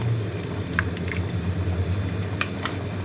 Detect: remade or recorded recorded